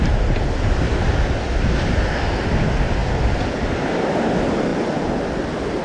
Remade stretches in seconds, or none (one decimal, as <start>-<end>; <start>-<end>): 3.0-4.3